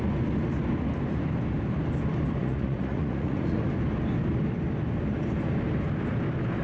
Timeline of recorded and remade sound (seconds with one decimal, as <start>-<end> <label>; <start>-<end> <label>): 0.0-2.4 recorded; 2.4-3.6 remade; 3.6-6.6 recorded